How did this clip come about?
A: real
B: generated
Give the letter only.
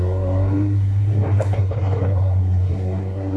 B